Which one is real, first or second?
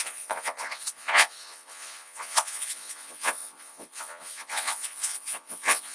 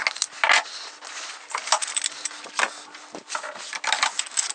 second